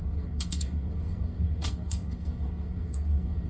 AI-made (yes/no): yes